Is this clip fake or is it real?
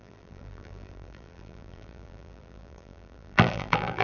fake